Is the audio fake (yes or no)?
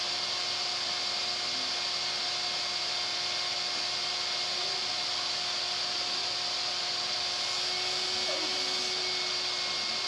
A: no